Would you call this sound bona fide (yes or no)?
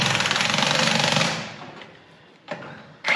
no